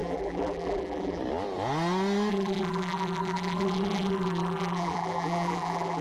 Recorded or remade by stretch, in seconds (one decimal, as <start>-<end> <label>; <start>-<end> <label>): 0.0-1.2 remade; 1.2-2.3 recorded; 2.3-6.0 remade